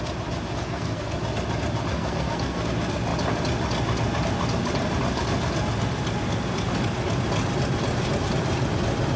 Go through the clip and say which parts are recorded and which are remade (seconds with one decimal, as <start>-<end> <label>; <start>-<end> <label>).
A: 0.0-0.6 recorded; 0.6-1.2 remade; 1.2-1.9 recorded; 1.9-2.7 remade; 2.7-9.2 recorded